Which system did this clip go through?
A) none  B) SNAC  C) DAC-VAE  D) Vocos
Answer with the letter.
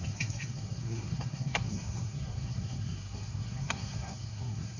B